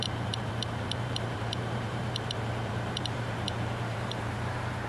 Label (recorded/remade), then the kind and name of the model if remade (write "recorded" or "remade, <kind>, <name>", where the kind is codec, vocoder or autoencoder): remade, vocoder, BigVGAN v2